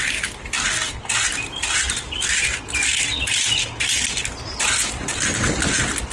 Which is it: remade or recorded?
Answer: recorded